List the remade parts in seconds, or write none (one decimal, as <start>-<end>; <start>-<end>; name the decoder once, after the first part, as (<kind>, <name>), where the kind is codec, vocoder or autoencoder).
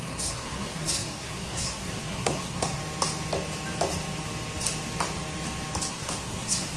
0.0-2.8 (codec, SNAC); 5.9-6.8